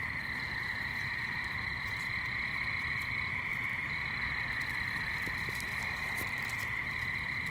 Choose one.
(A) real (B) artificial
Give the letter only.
B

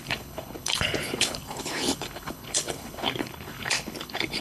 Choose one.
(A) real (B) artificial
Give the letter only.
B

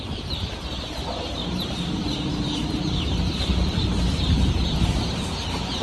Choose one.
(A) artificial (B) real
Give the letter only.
A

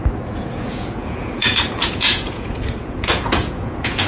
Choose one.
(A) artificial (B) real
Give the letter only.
A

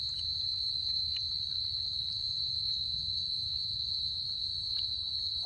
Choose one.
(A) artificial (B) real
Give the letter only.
B